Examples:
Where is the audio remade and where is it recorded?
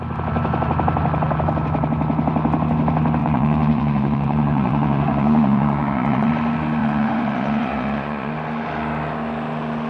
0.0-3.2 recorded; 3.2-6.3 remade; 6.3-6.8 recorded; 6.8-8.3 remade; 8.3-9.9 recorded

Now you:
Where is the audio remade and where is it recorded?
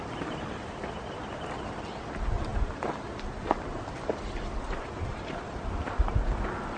0.0-6.8 recorded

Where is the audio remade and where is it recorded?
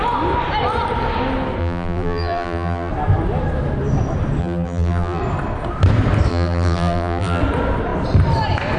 0.0-1.6 recorded; 1.6-2.9 remade; 2.9-4.4 recorded; 4.4-5.2 remade; 5.2-6.3 recorded; 6.3-7.4 remade; 7.4-8.8 recorded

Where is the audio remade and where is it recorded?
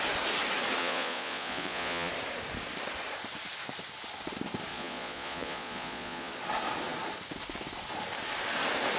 0.0-0.8 recorded; 0.8-2.1 remade; 2.1-4.7 recorded; 4.7-6.3 remade; 6.3-9.0 recorded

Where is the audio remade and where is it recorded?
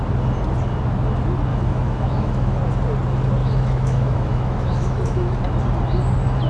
0.0-1.5 recorded; 1.5-2.6 remade; 2.6-3.4 recorded; 3.4-5.4 remade; 5.4-6.5 recorded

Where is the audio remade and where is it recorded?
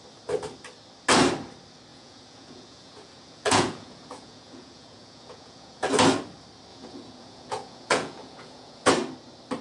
0.0-1.9 recorded; 1.9-5.9 remade; 5.9-6.7 recorded; 6.7-8.9 remade; 8.9-9.6 recorded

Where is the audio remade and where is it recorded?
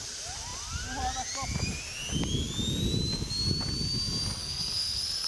0.0-4.4 recorded; 4.4-5.3 remade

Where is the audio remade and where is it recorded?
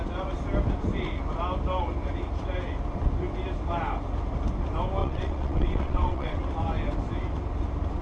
0.0-5.0 recorded; 5.0-6.4 remade; 6.4-8.0 recorded